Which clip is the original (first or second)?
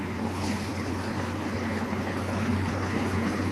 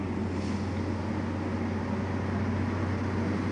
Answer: second